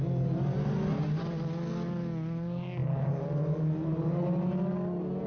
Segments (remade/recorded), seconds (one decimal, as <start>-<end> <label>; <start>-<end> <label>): 0.0-5.3 recorded